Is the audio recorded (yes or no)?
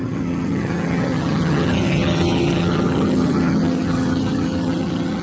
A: no